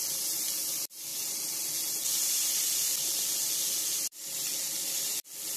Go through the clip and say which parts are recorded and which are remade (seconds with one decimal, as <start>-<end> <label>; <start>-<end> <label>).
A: 0.0-5.6 recorded

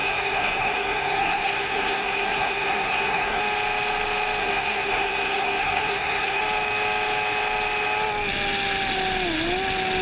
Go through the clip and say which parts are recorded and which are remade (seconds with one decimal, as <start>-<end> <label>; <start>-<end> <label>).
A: 0.0-3.4 remade; 3.4-4.4 recorded; 4.4-6.4 remade; 6.4-10.0 recorded